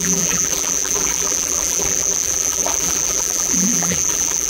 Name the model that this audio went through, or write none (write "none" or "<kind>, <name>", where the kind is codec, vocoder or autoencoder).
vocoder, BigVGAN v2